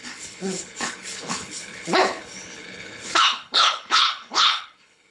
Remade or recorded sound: remade